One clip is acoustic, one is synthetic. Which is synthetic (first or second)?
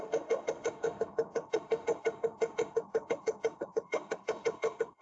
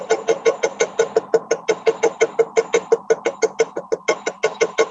first